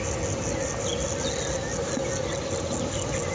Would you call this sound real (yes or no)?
yes